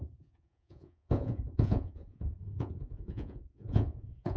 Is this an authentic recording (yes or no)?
no